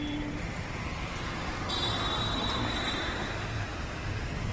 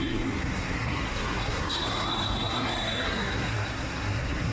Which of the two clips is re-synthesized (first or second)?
second